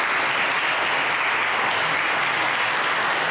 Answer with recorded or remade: recorded